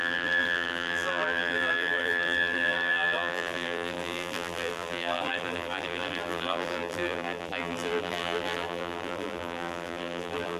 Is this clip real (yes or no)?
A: no